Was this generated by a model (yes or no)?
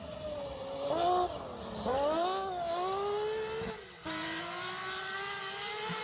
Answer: no